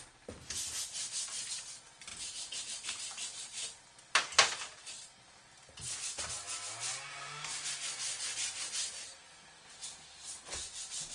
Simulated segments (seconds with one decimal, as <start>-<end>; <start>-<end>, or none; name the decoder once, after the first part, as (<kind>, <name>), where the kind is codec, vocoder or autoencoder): none